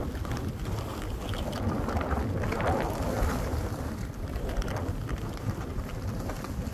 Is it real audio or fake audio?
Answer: real